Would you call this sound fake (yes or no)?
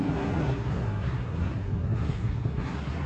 yes